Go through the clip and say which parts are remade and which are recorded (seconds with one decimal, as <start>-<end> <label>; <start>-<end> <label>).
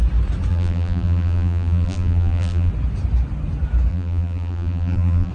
0.0-0.5 recorded; 0.5-2.7 remade; 2.7-3.9 recorded; 3.9-5.3 remade